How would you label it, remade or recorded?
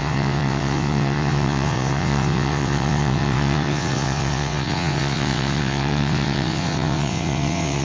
remade